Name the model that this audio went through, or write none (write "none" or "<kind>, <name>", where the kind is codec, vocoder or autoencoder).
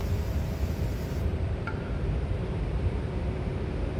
vocoder, BigVGAN v2